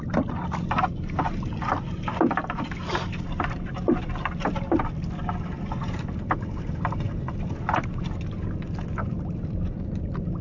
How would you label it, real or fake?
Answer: real